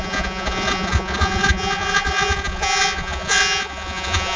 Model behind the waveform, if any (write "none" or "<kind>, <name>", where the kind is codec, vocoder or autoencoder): vocoder, Vocos